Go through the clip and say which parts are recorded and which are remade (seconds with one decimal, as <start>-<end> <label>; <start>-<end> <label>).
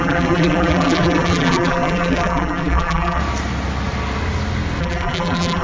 0.0-3.2 remade; 3.2-4.8 recorded; 4.8-5.6 remade